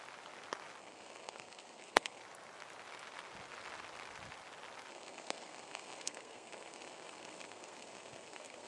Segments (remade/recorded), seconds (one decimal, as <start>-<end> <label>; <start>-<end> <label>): 0.0-0.8 recorded; 0.8-2.2 remade; 2.2-4.9 recorded; 4.9-8.7 remade